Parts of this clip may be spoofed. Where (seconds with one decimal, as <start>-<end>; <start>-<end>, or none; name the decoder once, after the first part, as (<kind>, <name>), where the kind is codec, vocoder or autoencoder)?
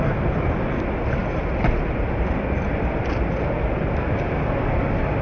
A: none